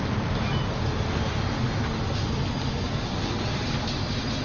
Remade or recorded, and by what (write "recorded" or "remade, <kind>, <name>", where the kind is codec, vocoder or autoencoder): recorded